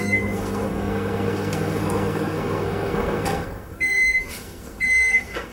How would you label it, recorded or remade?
remade